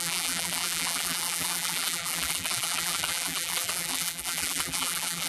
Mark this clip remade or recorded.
remade